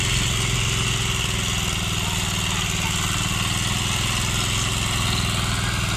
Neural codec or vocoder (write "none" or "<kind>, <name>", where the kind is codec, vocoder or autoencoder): none